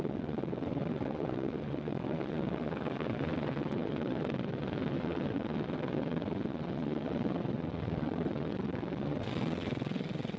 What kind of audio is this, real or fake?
fake